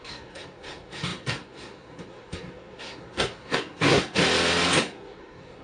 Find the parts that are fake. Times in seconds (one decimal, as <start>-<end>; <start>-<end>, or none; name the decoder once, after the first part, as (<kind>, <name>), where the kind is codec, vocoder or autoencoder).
0.0-4.2 (codec, SNAC); 4.8-5.6